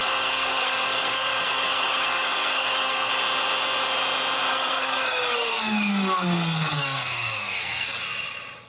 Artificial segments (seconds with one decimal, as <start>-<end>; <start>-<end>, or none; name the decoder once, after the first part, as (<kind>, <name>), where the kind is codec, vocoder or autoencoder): 0.0-3.1 (codec, SNAC); 4.5-8.0